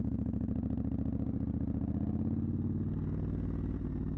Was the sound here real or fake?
real